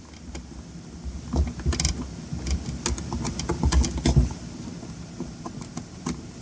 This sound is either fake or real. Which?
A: real